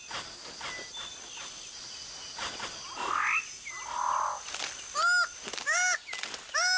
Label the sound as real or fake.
real